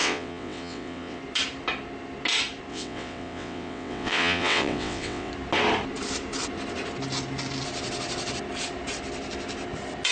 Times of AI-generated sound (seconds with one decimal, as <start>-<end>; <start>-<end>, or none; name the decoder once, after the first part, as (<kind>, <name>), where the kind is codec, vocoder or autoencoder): 0.0-1.2 (vocoder, WaveNeXt); 2.7-5.3